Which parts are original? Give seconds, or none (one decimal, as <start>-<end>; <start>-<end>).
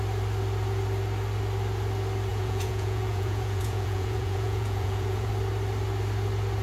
0.0-2.3; 5.3-6.6